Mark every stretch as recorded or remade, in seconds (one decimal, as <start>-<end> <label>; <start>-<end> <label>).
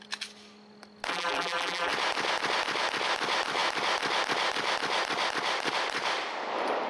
0.0-1.1 recorded; 1.1-1.9 remade; 1.9-6.9 recorded